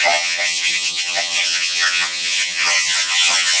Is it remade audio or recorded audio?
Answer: remade